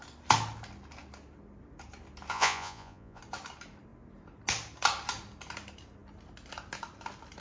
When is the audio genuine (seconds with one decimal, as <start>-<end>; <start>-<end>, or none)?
0.0-2.3; 3.2-7.4